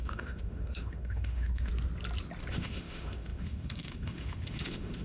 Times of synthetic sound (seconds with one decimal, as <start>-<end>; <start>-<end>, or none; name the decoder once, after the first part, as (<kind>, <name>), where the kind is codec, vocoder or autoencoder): 0.0-1.7 (autoencoder, DAC-VAE); 2.5-5.0